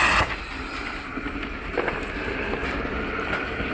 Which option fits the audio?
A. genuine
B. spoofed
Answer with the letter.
A